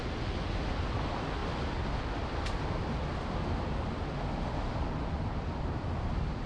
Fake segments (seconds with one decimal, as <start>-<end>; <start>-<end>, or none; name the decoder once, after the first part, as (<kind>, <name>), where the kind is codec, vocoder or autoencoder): none